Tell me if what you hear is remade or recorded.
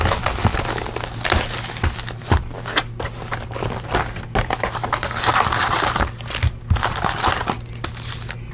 recorded